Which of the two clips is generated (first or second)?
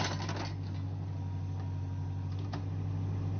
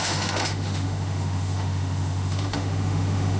second